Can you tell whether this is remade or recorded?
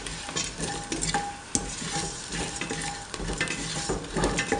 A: recorded